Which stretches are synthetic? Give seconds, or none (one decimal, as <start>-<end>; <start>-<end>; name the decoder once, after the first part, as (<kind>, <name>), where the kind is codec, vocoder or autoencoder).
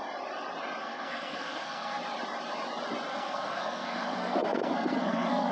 0.8-2.0 (codec, SNAC); 3.1-5.5